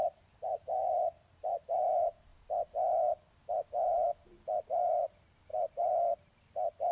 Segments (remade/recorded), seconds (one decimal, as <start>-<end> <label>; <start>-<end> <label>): 0.0-2.3 remade; 2.3-4.7 recorded; 4.7-6.9 remade